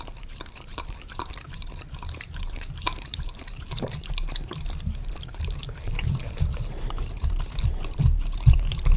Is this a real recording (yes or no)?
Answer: no